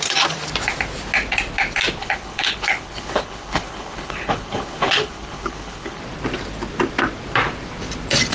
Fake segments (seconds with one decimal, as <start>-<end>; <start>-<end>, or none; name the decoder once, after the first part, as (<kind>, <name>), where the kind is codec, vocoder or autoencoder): 2.0-6.0 (codec, HILCodec)